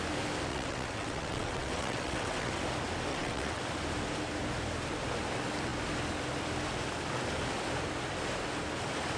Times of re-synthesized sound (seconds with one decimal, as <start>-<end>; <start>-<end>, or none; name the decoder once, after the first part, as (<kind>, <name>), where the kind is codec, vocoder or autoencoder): 0.5-2.5 (vocoder, WaveNeXt); 3.1-3.6